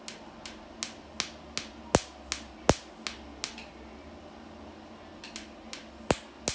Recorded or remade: recorded